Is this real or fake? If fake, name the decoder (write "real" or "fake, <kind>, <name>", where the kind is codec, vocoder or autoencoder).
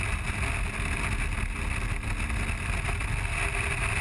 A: real